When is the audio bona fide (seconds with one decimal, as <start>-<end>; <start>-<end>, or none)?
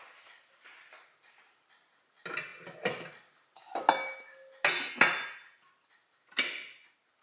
0.0-7.2